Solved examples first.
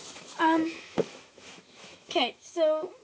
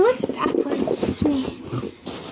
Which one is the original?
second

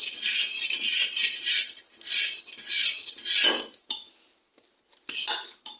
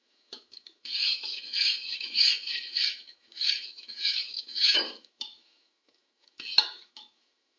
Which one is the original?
first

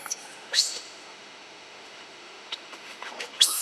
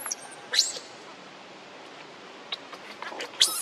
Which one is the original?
second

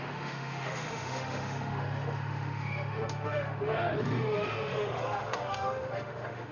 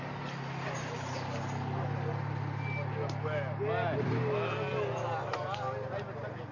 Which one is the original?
second